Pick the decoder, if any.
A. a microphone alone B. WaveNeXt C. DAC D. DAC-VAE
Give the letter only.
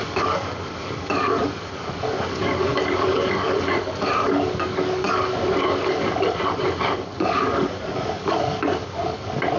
C